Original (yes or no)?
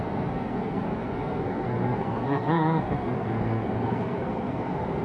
no